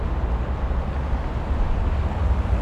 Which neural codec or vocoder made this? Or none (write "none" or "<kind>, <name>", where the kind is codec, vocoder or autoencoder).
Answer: none